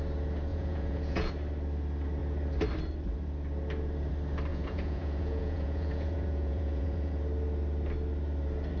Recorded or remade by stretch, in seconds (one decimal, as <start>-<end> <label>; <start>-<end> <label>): 0.0-0.5 recorded; 0.5-1.3 remade; 1.3-4.5 recorded; 4.5-7.1 remade; 7.1-8.8 recorded